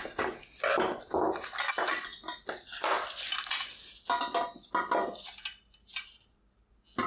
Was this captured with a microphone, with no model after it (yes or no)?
yes